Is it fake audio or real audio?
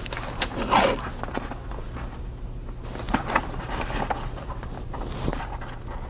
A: real